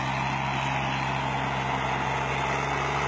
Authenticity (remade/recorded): recorded